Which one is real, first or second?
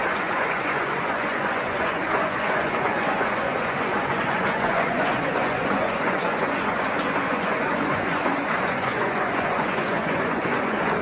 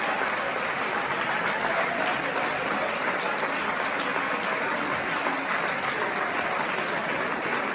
second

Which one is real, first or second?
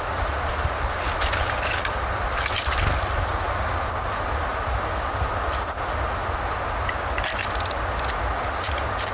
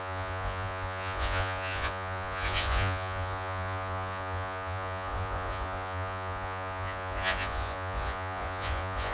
first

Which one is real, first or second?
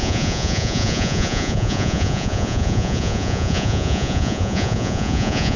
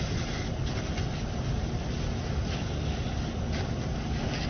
second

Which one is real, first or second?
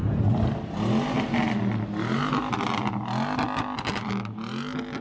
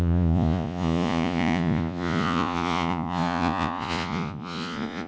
first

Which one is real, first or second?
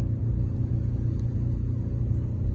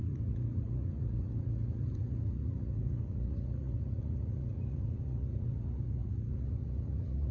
first